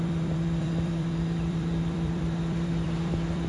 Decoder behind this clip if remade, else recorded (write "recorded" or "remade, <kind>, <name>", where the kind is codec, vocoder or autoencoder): remade, vocoder, BigVGAN v2